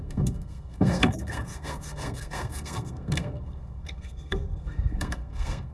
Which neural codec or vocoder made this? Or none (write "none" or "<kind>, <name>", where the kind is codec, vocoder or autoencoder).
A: codec, SNAC